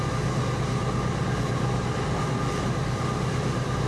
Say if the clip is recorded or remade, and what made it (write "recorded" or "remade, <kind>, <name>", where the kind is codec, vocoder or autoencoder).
recorded